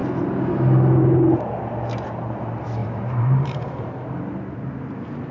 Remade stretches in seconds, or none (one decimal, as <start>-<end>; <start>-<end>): 2.8-4.7